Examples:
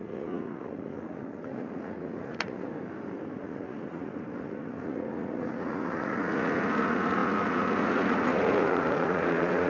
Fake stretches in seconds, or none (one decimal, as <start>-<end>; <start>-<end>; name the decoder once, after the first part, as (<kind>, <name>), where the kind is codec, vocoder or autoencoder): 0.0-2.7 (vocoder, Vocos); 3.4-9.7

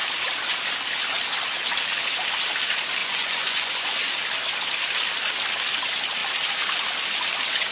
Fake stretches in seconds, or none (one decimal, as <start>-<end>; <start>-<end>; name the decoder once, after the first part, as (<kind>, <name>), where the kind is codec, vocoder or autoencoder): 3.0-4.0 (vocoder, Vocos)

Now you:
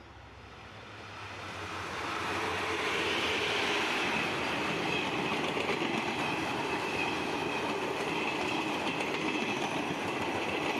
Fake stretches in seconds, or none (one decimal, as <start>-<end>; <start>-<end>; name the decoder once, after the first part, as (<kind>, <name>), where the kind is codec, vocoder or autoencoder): none

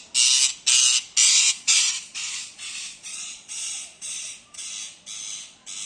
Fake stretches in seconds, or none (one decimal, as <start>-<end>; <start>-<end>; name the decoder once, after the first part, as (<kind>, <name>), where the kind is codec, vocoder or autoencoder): 1.2-4.7 (vocoder, Vocos)

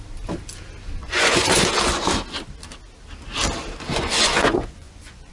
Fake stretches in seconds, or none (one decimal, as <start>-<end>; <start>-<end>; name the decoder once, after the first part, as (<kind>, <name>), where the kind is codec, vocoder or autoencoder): 1.0-1.7 (vocoder, Vocos); 3.9-5.3

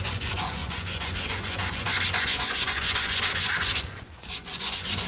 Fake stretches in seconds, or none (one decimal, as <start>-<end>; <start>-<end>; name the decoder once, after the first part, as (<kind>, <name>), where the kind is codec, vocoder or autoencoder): 0.0-5.1 (vocoder, Vocos)

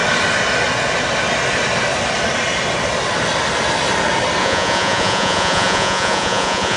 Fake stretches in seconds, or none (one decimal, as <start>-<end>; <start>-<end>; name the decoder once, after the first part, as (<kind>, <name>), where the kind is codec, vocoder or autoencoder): 4.4-6.8 (vocoder, Vocos)